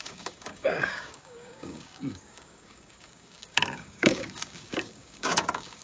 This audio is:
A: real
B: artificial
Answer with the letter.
B